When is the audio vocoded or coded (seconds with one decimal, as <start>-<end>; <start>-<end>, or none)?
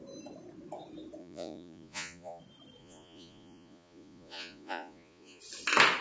1.2-2.4; 2.8-5.4